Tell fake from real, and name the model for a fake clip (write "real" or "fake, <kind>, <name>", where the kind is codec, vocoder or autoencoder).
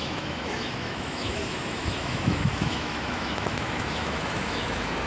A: fake, autoencoder, DAC-VAE